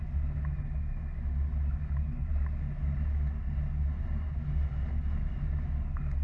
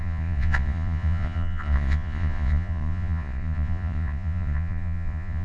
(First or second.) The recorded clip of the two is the first